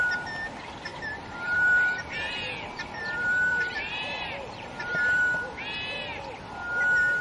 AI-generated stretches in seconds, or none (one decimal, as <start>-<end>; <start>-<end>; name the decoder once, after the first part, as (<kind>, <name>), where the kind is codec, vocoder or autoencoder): 0.9-5.2 (vocoder, BigVGAN v2)